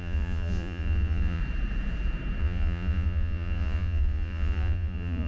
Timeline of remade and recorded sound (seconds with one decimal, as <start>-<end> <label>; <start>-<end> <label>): 0.0-1.4 remade; 1.4-2.4 recorded; 2.4-5.3 remade